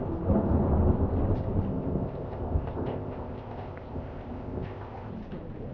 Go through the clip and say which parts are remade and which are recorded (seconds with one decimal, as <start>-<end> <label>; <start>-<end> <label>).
0.0-1.7 recorded; 1.7-5.1 remade; 5.1-5.7 recorded